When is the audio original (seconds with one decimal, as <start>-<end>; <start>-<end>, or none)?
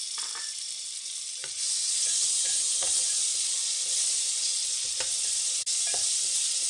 0.0-1.4; 3.0-6.7